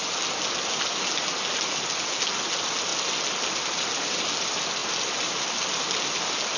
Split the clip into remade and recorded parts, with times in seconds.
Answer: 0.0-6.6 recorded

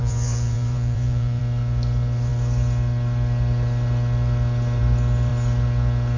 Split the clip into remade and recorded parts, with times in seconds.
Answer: 0.0-1.4 remade; 1.4-6.2 recorded

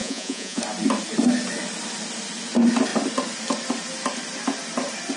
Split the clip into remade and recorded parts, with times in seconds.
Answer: 0.0-0.6 remade; 0.6-5.2 recorded